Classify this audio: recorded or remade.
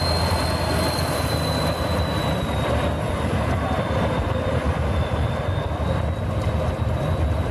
recorded